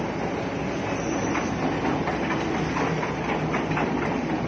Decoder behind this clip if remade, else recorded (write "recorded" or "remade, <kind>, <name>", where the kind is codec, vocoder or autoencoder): recorded